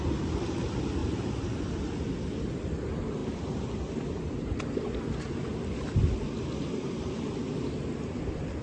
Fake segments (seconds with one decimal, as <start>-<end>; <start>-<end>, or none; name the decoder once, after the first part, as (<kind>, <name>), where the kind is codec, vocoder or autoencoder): none